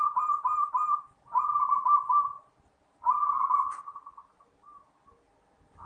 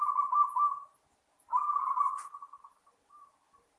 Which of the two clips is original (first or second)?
first